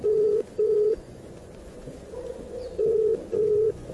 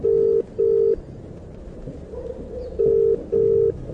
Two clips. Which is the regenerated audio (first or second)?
first